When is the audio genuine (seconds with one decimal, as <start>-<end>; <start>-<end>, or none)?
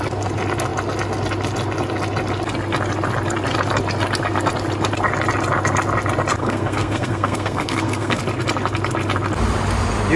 0.0-6.4; 8.2-10.2